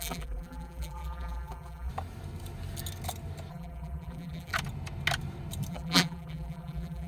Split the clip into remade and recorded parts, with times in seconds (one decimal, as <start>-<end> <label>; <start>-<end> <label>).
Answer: 0.0-1.9 remade; 1.9-3.5 recorded; 3.5-4.5 remade; 4.5-5.7 recorded; 5.7-7.1 remade